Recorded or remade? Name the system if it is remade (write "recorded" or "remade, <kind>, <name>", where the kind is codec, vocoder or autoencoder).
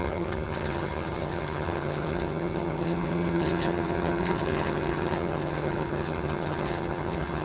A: remade, vocoder, HiFi-GAN